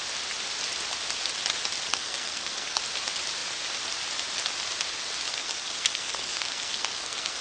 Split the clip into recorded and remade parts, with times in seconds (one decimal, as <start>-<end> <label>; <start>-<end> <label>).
0.0-1.9 recorded; 1.9-2.8 remade; 2.8-5.3 recorded; 5.3-7.4 remade